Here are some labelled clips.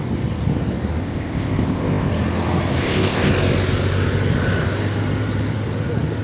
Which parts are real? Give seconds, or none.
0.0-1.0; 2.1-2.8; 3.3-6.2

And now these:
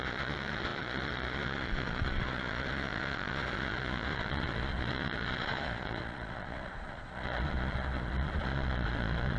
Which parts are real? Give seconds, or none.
none